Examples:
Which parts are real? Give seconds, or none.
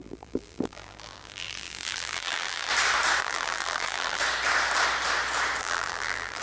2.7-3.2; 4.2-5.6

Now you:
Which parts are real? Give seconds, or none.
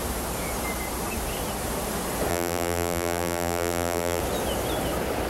0.0-2.3; 4.2-5.3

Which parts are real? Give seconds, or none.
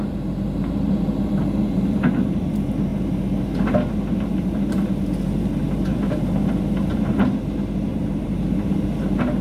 0.0-7.9; 8.9-9.4